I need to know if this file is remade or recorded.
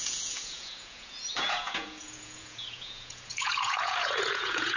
remade